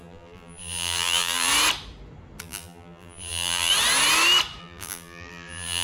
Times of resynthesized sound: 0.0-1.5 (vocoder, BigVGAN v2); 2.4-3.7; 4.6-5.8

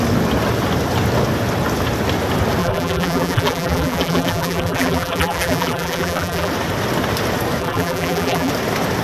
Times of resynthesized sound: 2.6-6.5 (vocoder, BigVGAN v2); 7.6-8.5

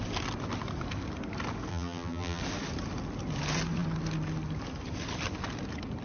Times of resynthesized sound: 1.7-2.4 (vocoder, BigVGAN v2)

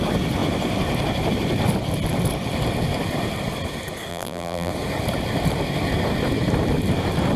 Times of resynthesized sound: 4.1-4.7 (vocoder, BigVGAN v2)

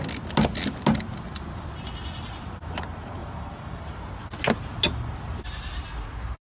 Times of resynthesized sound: 3.2-3.8 (vocoder, BigVGAN v2)

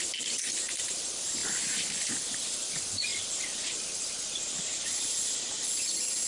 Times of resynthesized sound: none